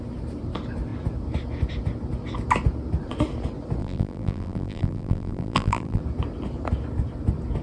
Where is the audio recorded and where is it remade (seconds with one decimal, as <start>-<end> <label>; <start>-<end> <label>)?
0.0-3.8 recorded; 3.8-6.0 remade; 6.0-7.6 recorded